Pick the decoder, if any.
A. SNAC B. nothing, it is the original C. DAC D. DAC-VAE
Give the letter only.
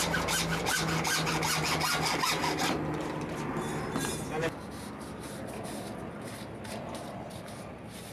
B